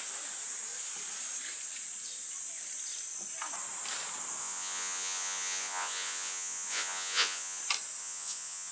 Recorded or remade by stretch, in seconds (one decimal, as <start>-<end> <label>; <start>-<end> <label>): 0.0-4.4 recorded; 4.4-7.6 remade; 7.6-8.0 recorded; 8.0-8.7 remade